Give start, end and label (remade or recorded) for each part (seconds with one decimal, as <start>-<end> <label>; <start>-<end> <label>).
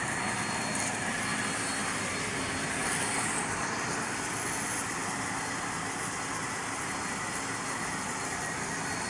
0.0-9.1 recorded